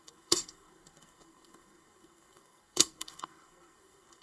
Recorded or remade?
remade